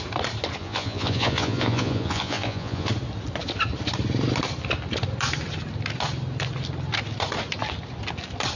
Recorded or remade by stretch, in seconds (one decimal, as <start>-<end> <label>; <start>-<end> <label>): 0.0-0.6 recorded; 0.6-2.9 remade; 2.9-8.6 recorded